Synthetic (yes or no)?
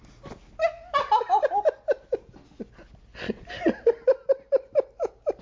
no